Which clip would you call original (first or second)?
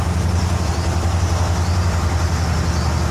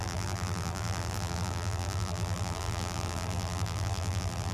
first